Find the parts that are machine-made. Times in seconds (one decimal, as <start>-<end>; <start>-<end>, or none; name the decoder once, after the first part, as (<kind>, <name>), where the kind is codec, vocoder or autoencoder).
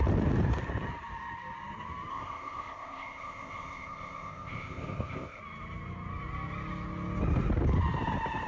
2.1-5.4 (codec, ZipCodec)